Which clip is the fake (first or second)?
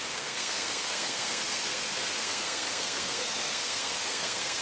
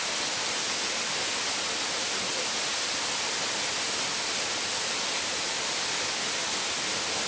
first